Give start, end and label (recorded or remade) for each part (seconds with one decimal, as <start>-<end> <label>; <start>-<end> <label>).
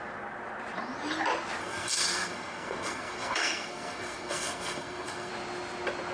0.0-1.6 recorded; 1.6-5.3 remade; 5.3-6.1 recorded